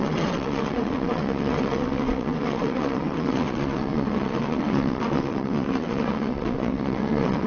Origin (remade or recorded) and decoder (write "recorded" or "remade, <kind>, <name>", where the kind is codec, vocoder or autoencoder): remade, vocoder, WaveNeXt